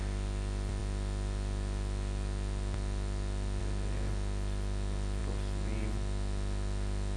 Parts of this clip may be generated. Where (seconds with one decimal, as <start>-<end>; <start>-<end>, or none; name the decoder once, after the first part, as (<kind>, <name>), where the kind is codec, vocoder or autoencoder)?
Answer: none

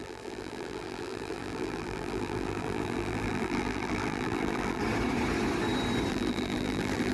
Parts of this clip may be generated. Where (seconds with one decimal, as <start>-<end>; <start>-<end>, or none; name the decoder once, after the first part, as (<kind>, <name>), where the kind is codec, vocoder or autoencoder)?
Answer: 0.0-4.8 (vocoder, BigVGAN v2); 6.1-7.1

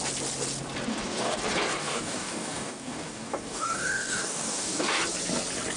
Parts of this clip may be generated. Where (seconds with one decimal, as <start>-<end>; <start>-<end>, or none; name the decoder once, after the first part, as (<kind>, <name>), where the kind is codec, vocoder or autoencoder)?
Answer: 0.9-1.4 (codec, DAC); 1.8-5.0

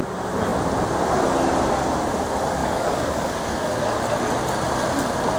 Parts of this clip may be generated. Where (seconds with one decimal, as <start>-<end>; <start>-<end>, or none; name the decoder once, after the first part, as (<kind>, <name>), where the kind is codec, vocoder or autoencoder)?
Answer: 2.6-4.0 (codec, DAC)

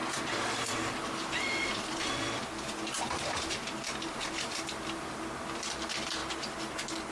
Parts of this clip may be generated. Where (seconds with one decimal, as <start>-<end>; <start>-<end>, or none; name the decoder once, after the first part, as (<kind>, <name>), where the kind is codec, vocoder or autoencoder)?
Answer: 0.0-6.2 (vocoder, BigVGAN v2)